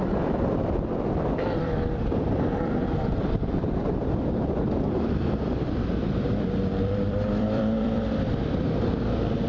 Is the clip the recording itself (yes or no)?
no